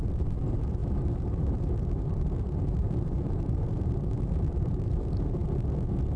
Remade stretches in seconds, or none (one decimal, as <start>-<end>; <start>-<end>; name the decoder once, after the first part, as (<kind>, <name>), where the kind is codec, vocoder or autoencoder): 0.0-5.4 (vocoder, BigVGAN v2)